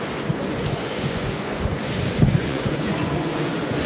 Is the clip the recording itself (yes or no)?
no